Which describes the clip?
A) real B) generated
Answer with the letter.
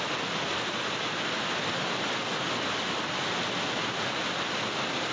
A